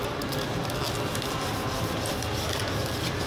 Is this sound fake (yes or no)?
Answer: no